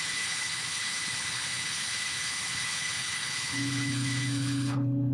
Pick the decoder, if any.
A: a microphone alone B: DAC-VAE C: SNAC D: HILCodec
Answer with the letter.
D